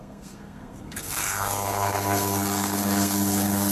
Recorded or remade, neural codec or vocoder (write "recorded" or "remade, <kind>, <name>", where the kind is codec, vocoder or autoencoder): remade, codec, SNAC